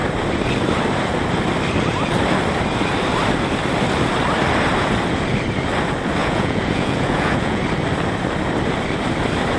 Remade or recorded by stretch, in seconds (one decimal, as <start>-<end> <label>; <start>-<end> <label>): 0.0-6.2 recorded; 6.2-7.6 remade; 7.6-9.6 recorded